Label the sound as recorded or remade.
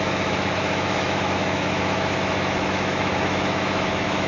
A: remade